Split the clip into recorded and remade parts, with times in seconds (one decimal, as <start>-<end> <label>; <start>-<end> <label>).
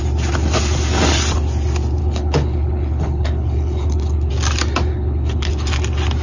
0.0-2.0 recorded; 2.0-4.3 remade; 4.3-4.9 recorded; 4.9-5.5 remade; 5.5-6.2 recorded